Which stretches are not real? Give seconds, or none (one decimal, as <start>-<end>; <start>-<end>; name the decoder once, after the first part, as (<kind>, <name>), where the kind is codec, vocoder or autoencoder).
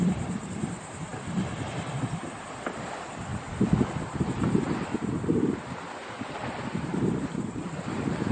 none